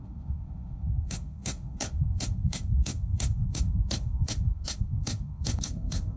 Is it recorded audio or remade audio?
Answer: remade